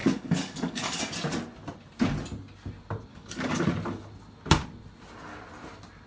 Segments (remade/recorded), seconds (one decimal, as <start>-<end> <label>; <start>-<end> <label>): 0.0-1.0 remade; 1.0-3.1 recorded; 3.1-3.6 remade; 3.6-6.1 recorded